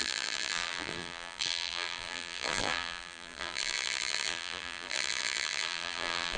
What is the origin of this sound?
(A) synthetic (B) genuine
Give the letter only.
A